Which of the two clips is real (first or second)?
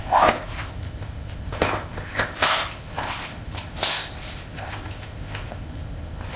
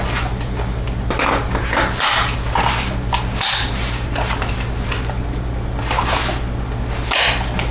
second